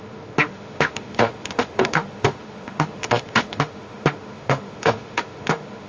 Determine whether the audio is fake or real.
fake